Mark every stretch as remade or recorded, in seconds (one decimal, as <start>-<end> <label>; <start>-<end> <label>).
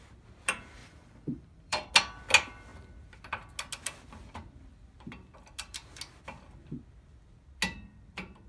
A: 0.0-0.8 recorded; 0.8-1.9 remade; 1.9-8.5 recorded